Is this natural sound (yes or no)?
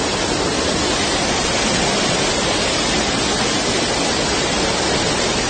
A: yes